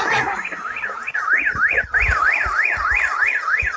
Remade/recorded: recorded